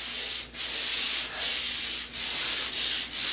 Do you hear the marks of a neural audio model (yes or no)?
no